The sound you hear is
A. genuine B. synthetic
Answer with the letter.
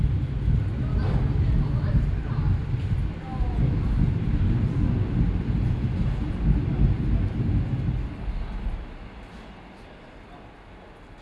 A